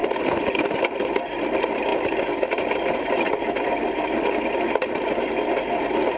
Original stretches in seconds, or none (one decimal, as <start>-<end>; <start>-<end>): 0.0-1.9; 4.1-6.2